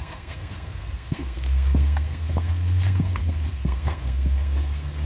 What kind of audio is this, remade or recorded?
remade